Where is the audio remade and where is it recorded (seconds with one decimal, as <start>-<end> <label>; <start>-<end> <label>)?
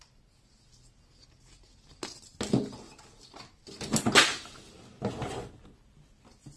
0.0-6.6 recorded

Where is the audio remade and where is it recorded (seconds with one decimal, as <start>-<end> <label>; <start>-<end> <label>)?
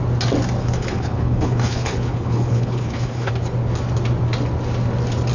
0.0-0.6 recorded; 0.6-3.3 remade; 3.3-5.3 recorded